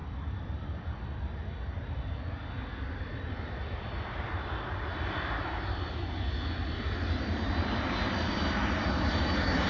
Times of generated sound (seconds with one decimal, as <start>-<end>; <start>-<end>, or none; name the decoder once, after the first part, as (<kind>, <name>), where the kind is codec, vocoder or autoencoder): none